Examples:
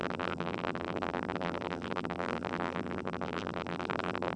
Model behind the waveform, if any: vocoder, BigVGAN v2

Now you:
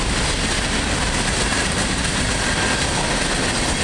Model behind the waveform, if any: none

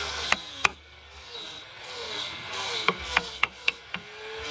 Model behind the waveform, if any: codec, SNAC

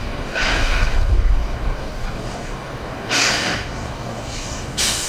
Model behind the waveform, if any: codec, DAC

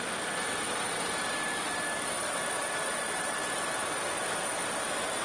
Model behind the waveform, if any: none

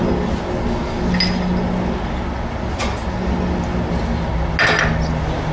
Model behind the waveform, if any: none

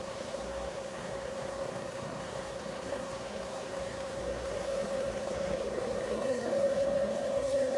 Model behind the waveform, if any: codec, SNAC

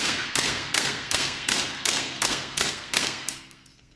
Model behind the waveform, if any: codec, SNAC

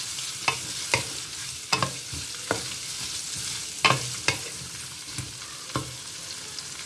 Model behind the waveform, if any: none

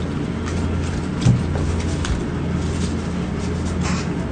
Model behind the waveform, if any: none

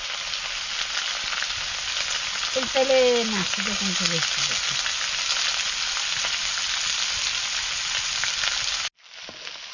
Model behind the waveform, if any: none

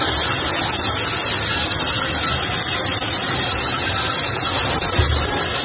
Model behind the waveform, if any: none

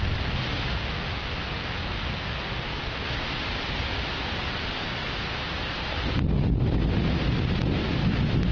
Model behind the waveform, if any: none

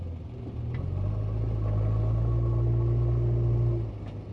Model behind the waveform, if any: none